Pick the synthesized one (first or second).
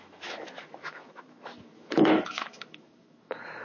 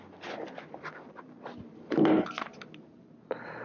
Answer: first